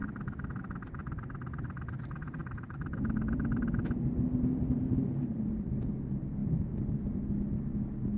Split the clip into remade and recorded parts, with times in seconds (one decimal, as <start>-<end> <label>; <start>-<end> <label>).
0.0-0.6 remade; 0.6-1.0 recorded; 1.0-2.0 remade; 2.0-2.4 recorded; 2.4-3.6 remade; 3.6-6.4 recorded; 6.4-7.4 remade; 7.4-8.2 recorded